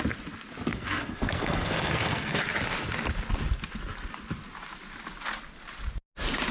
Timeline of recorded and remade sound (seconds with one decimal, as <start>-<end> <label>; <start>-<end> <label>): 0.0-0.7 recorded; 0.7-2.4 remade; 2.4-6.5 recorded